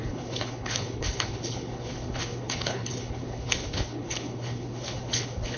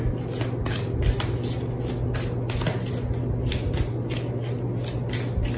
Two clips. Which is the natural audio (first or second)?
second